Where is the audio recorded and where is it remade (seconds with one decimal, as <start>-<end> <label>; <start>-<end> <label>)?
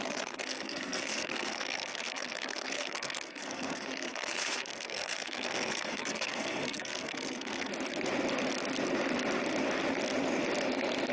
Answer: 0.0-7.7 remade; 7.7-11.1 recorded